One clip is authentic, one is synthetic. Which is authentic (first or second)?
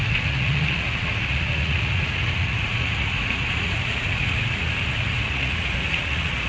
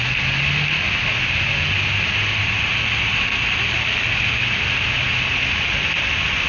second